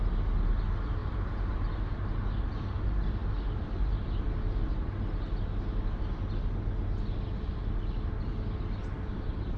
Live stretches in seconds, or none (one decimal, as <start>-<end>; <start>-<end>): 0.0-9.6